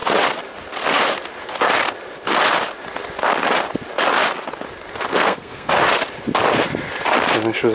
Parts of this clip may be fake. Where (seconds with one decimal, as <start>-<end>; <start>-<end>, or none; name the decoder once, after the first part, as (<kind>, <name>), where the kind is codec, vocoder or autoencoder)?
5.1-5.7 (codec, SNAC)